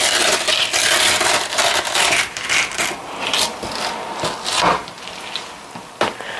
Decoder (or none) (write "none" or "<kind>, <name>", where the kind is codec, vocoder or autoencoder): vocoder, BigVGAN v2